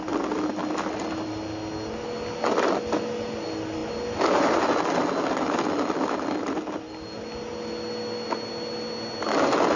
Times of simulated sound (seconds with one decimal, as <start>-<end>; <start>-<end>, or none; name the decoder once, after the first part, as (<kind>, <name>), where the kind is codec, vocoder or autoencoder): none